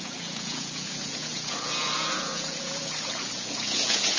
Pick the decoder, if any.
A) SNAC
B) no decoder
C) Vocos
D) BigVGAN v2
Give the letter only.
C